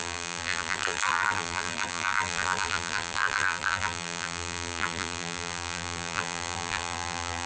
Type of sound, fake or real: fake